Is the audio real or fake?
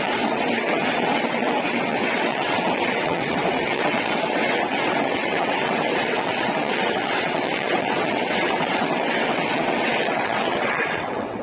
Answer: fake